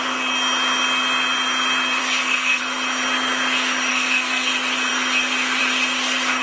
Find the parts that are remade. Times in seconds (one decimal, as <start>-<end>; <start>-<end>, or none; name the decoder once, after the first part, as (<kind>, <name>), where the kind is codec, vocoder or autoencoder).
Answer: 2.0-2.6 (codec, SNAC); 3.9-4.5